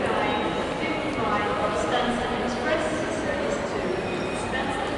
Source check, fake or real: real